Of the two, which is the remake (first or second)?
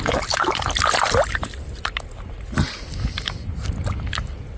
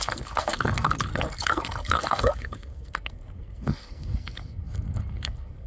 second